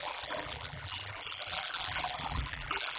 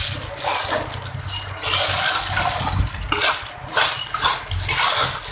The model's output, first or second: first